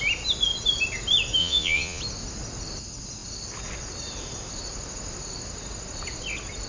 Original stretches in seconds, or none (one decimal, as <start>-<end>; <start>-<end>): 0.0-1.4; 2.0-6.7